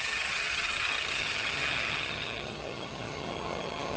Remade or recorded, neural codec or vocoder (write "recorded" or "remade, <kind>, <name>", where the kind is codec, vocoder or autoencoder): remade, vocoder, HiFi-GAN